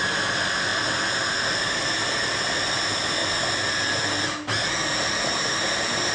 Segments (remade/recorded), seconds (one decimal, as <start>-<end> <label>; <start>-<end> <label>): 0.0-6.1 recorded